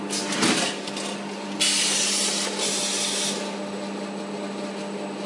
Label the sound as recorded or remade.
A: recorded